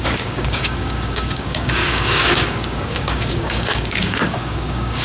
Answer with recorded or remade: remade